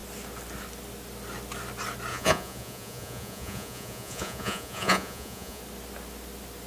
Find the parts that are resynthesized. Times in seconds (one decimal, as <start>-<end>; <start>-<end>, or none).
2.1-5.6